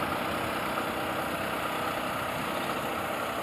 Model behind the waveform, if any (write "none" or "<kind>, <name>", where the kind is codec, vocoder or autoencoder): none